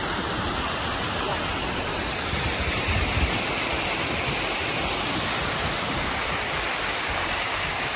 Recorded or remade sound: recorded